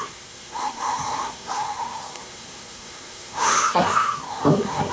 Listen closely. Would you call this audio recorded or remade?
remade